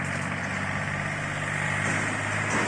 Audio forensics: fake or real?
real